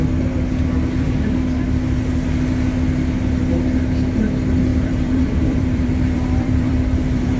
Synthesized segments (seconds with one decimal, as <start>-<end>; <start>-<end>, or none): 4.7-7.4